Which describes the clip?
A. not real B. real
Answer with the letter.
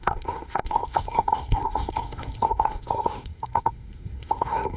A